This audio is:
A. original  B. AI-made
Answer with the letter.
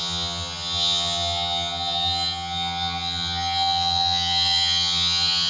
B